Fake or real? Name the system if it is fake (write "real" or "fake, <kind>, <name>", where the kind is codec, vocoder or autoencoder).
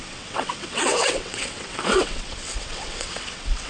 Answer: fake, vocoder, WaveNeXt